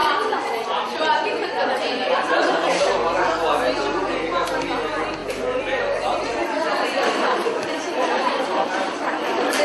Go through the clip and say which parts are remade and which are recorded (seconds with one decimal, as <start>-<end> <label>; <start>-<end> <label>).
0.0-2.5 remade; 2.5-5.2 recorded; 5.2-9.0 remade; 9.0-9.6 recorded